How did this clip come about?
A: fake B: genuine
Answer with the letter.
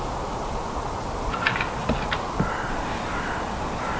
B